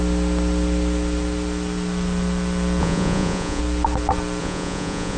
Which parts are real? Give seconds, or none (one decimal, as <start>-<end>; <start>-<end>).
0.0-2.8; 3.6-4.4